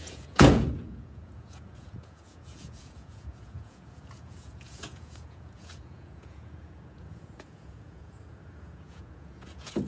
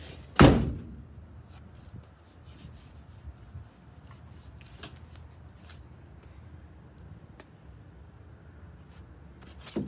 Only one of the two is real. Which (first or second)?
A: second